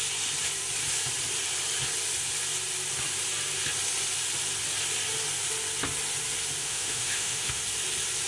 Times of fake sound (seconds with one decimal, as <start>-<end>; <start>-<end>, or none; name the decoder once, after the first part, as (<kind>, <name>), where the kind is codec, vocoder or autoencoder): 6.6-7.6 (autoencoder, DAC-VAE)

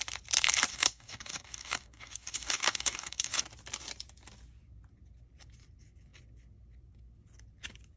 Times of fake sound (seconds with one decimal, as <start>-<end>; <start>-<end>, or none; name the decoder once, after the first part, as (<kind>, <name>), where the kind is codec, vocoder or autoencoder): 0.7-3.4 (codec, DAC)

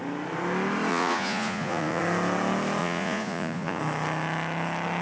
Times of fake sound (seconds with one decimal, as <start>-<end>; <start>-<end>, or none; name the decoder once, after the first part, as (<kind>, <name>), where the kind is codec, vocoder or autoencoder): 0.9-2.0 (vocoder, Vocos); 2.8-3.8

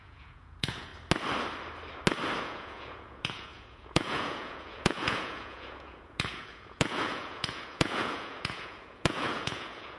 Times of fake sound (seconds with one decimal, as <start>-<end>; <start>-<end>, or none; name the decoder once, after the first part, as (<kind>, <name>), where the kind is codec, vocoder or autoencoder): 0.0-0.9 (vocoder, Vocos); 2.4-10.0